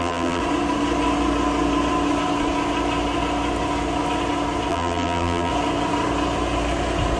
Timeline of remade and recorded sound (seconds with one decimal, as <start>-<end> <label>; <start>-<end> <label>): 0.0-0.4 remade; 0.4-4.7 recorded; 4.7-5.5 remade; 5.5-7.2 recorded